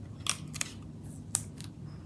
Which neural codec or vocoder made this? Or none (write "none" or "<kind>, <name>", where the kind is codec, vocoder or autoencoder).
none